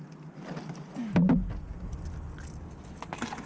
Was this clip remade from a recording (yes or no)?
no